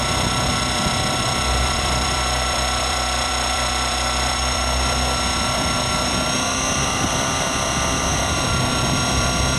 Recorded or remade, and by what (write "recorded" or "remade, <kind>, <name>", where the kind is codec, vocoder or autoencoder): remade, vocoder, BigVGAN v2